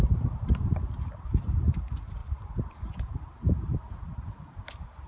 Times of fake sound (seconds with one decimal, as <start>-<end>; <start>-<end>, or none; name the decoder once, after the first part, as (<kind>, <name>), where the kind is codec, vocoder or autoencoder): 0.0-5.1 (vocoder, BigVGAN v2)